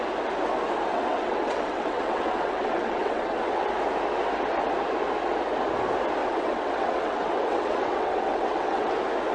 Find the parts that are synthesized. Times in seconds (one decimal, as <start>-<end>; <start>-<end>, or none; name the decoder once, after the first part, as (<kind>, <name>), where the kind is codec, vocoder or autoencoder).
0.9-3.7 (vocoder, WaveNeXt); 6.2-8.9